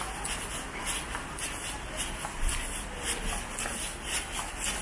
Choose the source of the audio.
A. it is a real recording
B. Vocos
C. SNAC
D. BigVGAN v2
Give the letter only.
A